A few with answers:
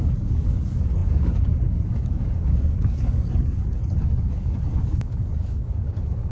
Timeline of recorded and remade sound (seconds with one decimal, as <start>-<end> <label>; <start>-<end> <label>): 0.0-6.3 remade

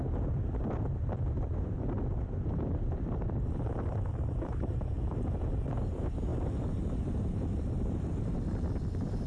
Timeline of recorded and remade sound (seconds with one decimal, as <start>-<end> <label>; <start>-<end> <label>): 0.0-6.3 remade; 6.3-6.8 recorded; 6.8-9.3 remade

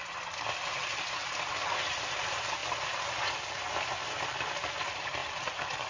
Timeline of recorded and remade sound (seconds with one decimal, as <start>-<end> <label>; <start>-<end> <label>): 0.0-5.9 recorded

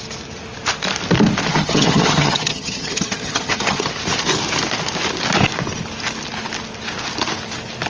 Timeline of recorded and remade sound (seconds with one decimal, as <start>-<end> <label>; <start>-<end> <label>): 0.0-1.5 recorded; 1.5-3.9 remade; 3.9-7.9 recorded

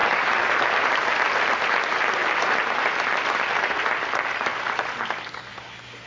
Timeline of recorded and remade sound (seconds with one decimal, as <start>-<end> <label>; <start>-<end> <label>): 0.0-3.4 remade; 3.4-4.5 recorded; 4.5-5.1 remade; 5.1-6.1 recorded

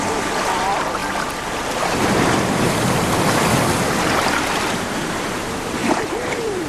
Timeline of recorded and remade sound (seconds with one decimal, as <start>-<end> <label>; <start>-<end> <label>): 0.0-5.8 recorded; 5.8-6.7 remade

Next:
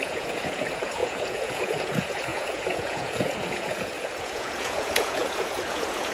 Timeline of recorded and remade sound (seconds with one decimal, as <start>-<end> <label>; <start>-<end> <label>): 0.0-6.1 remade

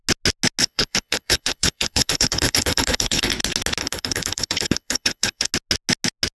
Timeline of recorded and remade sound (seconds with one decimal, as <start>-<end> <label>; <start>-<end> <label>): 0.0-0.6 recorded; 0.6-3.3 remade; 3.3-3.8 recorded; 3.8-5.5 remade; 5.5-6.3 recorded